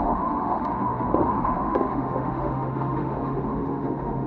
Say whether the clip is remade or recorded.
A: remade